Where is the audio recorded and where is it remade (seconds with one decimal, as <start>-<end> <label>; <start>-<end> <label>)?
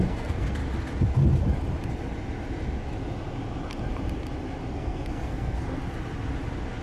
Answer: 0.0-0.6 remade; 0.6-4.7 recorded; 4.7-5.8 remade; 5.8-6.8 recorded